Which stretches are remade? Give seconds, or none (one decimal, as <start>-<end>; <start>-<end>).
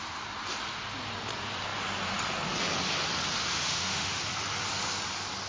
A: 3.4-4.2